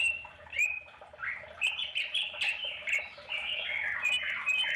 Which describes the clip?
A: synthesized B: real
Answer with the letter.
A